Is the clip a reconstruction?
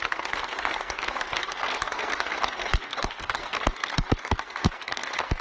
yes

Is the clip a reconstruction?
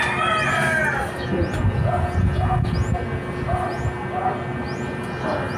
no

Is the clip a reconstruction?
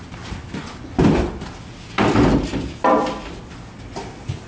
no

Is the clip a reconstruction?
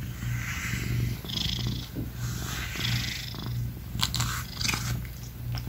no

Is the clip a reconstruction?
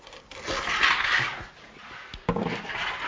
no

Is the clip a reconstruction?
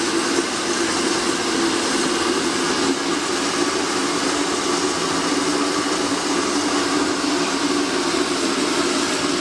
no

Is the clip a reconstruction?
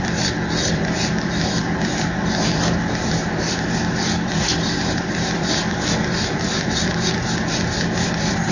yes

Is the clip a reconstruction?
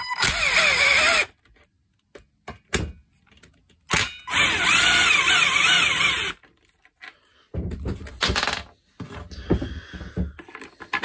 no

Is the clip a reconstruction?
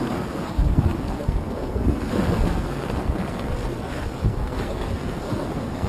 yes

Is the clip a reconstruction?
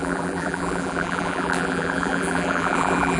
yes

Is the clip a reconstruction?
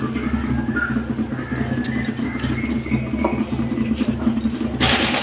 no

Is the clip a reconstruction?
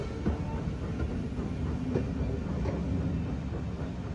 no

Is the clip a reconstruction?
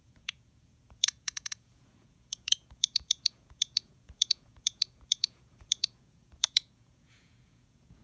yes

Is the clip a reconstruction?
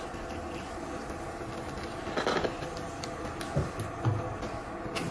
no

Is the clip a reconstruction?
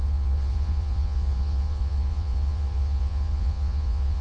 yes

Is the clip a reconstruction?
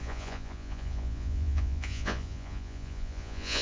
yes